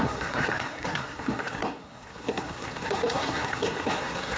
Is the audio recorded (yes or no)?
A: no